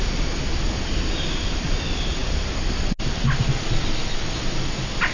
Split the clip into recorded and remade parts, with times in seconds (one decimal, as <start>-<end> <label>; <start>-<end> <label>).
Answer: 0.0-5.1 recorded